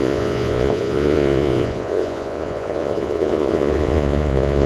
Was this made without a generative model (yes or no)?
no